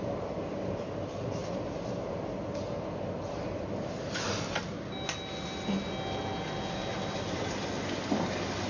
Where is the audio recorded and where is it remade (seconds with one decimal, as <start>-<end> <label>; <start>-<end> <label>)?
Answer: 0.0-1.4 recorded; 1.4-2.5 remade; 2.5-8.7 recorded